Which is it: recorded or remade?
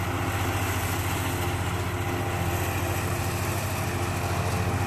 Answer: recorded